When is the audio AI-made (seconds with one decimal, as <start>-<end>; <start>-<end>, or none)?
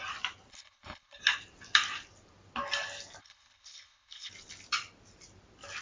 0.5-1.2; 3.2-4.3